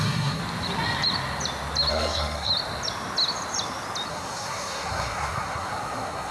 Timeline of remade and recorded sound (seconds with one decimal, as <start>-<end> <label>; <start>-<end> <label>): 0.0-0.4 remade; 0.4-1.9 recorded; 1.9-2.5 remade; 2.5-4.1 recorded; 4.1-6.3 remade